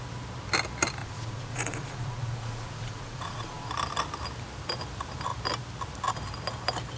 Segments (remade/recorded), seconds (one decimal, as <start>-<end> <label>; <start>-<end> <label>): 0.0-1.0 recorded; 1.0-3.7 remade; 3.7-7.0 recorded